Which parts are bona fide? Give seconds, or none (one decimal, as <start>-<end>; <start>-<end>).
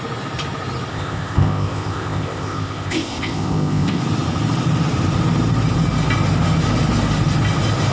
0.0-0.9; 4.0-7.9